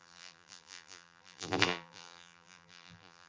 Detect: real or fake fake